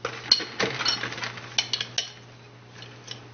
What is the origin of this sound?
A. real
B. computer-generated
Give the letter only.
A